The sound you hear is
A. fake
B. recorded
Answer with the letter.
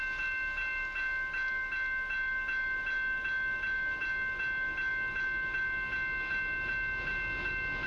B